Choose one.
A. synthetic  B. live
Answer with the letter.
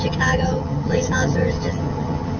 A